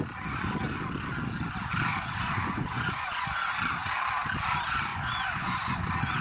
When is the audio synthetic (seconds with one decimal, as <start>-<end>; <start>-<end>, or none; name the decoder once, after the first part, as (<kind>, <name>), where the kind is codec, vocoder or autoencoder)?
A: 1.9-3.4 (vocoder, Vocos); 4.9-6.2